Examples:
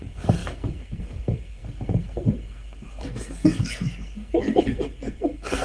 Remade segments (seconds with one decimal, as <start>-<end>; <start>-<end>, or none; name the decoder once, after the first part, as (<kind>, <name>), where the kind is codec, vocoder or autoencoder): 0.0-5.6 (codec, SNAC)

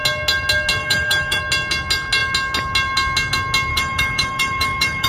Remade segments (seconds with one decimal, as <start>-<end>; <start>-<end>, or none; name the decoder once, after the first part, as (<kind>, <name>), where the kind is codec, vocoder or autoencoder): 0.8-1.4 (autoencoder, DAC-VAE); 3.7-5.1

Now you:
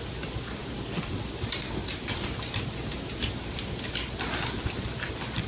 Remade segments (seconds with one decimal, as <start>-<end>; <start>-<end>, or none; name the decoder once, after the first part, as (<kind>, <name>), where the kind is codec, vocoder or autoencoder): none

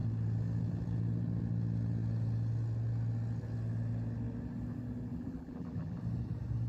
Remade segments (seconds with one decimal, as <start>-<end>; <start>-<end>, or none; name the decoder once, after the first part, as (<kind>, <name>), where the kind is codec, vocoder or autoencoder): 5.1-6.0 (vocoder, BigVGAN v2)

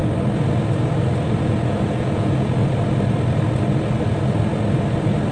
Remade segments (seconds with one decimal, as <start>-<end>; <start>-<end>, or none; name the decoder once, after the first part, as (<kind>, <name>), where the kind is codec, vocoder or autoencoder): 1.4-2.6 (vocoder, Vocos)

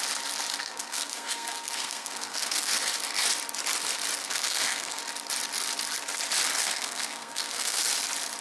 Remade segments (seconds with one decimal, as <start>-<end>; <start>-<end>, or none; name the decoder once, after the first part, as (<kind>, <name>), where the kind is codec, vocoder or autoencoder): 0.6-2.7 (codec, SNAC); 4.2-5.0; 6.6-7.8

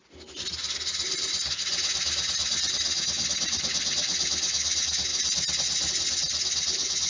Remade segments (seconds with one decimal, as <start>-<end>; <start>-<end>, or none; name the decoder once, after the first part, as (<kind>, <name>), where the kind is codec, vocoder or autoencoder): none

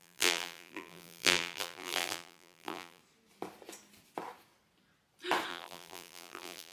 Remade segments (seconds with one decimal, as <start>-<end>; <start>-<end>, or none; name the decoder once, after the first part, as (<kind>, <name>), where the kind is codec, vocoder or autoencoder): 0.0-3.0 (vocoder, BigVGAN v2); 5.5-6.7